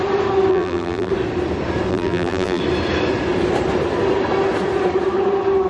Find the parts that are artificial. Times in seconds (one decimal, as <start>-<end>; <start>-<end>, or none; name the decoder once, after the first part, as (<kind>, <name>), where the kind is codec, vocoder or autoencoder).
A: 0.5-1.1 (vocoder, BigVGAN v2); 1.9-2.6